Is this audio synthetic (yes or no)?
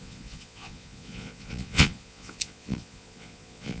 yes